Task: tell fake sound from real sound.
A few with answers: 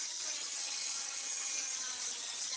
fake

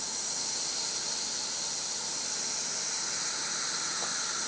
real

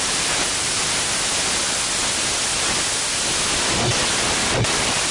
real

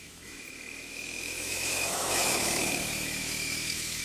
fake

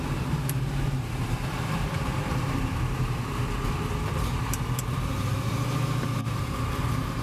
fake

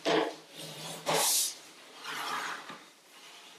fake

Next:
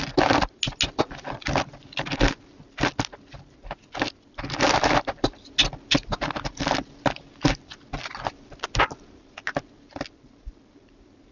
real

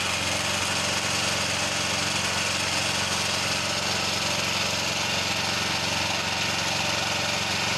real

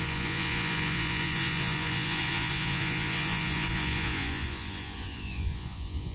fake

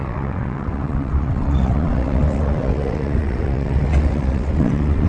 fake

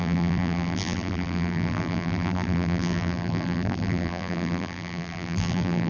fake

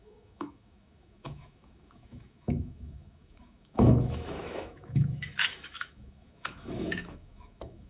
fake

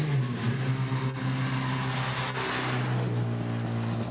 real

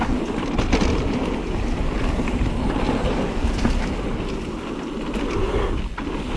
real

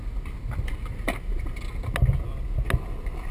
real